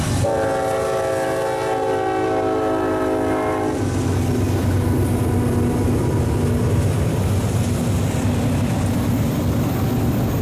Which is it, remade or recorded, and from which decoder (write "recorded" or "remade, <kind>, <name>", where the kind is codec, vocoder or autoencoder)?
recorded